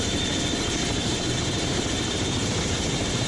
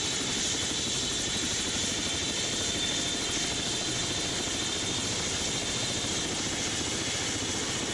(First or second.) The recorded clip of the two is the second